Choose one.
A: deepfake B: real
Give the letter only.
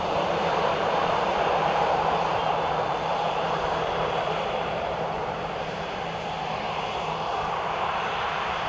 A